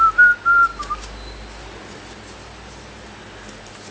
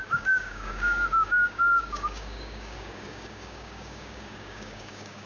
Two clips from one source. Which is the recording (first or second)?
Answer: first